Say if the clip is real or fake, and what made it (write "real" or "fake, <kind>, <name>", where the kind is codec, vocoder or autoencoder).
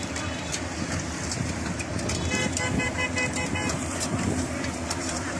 fake, vocoder, BigVGAN v2